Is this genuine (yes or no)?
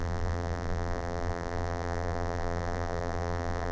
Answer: no